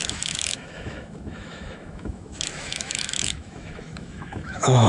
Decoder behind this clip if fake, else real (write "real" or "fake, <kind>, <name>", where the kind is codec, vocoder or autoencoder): fake, autoencoder, DAC-VAE